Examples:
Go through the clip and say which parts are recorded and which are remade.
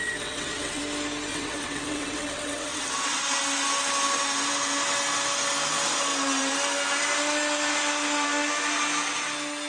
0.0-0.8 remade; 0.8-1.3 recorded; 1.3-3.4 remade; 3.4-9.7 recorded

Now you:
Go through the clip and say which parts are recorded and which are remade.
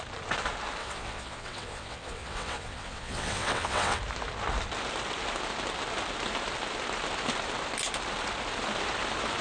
0.0-0.8 recorded; 0.8-4.0 remade; 4.0-9.4 recorded